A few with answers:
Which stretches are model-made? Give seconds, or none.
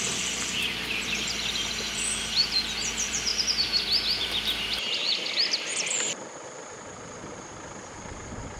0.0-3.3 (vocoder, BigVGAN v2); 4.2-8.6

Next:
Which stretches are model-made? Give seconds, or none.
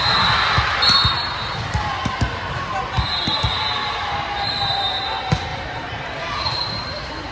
3.8-4.8 (vocoder, BigVGAN v2); 5.5-6.6